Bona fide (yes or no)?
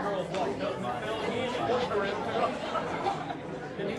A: yes